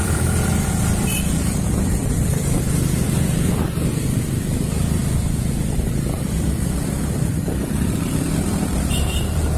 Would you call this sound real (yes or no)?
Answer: no